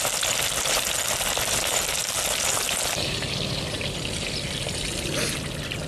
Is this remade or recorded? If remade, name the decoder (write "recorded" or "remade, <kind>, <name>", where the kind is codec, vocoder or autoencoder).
recorded